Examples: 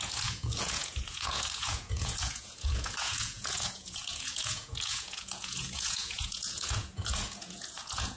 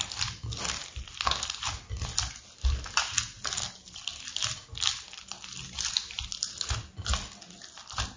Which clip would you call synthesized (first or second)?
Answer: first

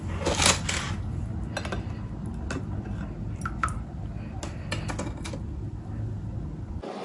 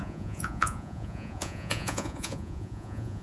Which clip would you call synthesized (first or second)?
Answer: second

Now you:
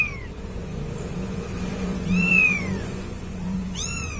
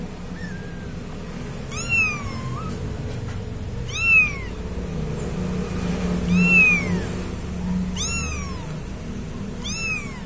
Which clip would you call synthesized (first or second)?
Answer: first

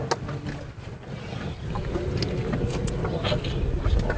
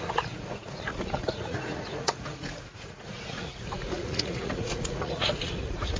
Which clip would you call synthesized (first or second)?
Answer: second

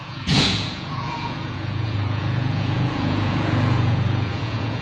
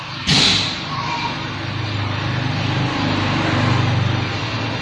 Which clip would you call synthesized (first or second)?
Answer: first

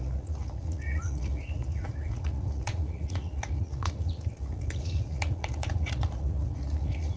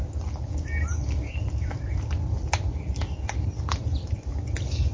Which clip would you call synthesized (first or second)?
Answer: first